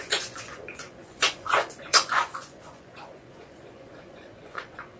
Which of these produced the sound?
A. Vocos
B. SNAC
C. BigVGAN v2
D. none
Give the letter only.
A